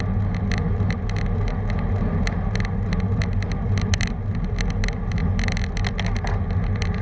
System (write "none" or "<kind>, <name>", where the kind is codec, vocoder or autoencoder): none